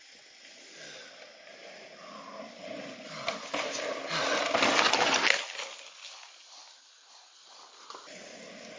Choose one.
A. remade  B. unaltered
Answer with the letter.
B